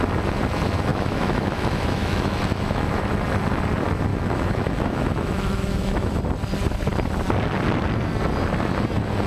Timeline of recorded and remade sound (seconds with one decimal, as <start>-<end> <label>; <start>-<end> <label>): 0.0-0.9 recorded; 0.9-3.0 remade; 3.0-4.1 recorded; 4.1-6.2 remade; 6.2-9.3 recorded